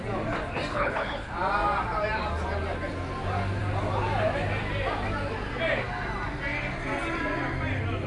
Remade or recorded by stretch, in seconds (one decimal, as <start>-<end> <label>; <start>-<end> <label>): 0.0-0.7 recorded; 0.7-1.3 remade; 1.3-8.1 recorded